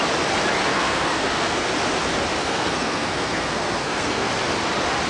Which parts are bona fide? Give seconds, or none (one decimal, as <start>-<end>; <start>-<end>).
0.0-0.7; 1.7-2.4; 4.3-5.1